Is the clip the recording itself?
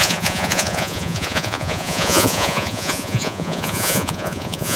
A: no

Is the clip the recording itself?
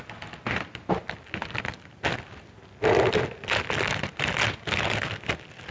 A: yes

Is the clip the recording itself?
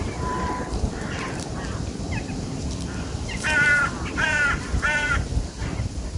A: no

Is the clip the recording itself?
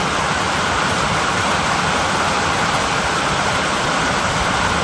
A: no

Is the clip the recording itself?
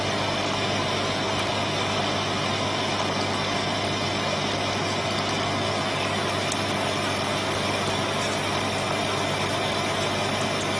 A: yes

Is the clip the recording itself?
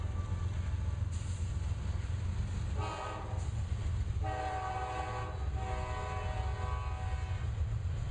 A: yes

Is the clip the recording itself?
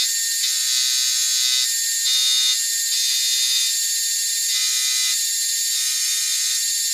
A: yes